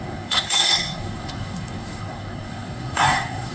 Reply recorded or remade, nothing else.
remade